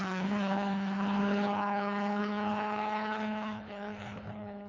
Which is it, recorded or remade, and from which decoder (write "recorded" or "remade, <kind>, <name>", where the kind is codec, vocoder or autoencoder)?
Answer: remade, codec, HILCodec